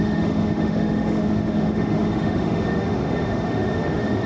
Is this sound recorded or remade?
remade